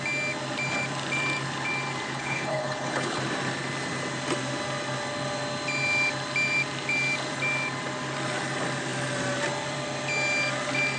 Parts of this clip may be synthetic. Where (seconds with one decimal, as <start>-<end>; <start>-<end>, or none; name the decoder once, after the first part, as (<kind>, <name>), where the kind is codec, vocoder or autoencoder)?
2.1-3.2 (codec, HILCodec)